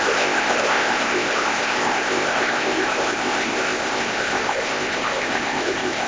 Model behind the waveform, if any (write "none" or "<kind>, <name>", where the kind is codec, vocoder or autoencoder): codec, ZipCodec